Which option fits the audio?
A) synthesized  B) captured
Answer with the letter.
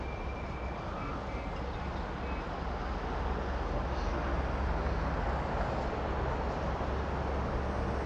B